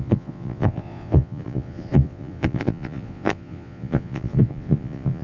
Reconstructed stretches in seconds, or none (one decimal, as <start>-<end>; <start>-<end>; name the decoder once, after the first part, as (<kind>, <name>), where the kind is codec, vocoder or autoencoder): 0.0-5.2 (vocoder, Vocos)